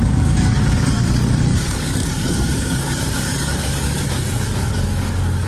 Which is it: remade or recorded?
remade